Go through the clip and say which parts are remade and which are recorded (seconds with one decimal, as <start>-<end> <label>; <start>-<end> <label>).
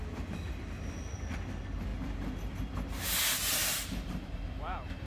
0.0-3.6 recorded; 3.6-5.1 remade